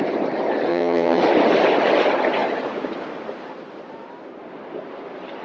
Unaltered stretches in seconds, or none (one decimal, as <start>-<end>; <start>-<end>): 0.0-0.7; 1.2-5.4